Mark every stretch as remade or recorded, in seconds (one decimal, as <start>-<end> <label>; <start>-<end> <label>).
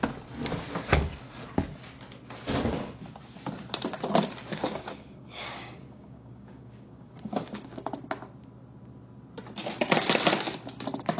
0.0-4.5 recorded; 4.5-7.9 remade; 7.9-11.2 recorded